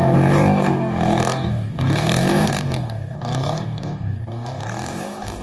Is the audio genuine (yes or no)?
no